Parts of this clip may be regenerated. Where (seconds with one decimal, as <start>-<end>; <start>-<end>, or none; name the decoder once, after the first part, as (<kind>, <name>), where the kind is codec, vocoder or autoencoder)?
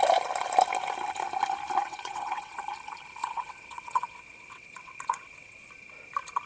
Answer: 1.8-2.6 (vocoder, WaveNeXt); 3.2-5.7